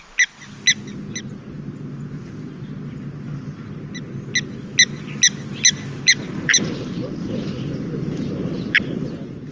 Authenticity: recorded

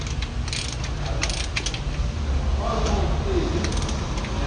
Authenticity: recorded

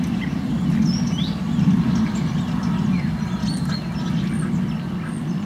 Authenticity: recorded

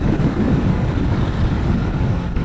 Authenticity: remade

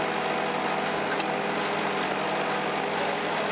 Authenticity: recorded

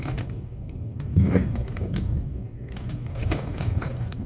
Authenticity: remade